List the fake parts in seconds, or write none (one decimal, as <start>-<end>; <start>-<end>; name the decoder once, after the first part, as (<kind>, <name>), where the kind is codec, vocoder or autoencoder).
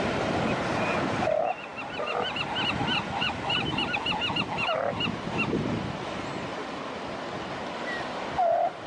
none